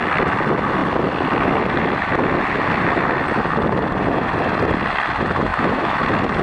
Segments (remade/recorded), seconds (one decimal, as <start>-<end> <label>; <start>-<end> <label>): 0.0-5.5 recorded; 5.5-6.0 remade; 6.0-6.4 recorded